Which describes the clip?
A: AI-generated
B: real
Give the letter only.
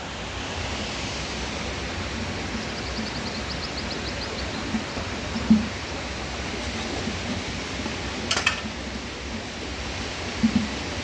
B